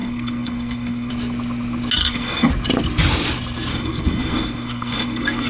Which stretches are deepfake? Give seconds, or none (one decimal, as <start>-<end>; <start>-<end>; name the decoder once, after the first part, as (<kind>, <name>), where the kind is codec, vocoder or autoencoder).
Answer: 0.0-1.1 (codec, SNAC); 2.0-2.5; 3.7-5.5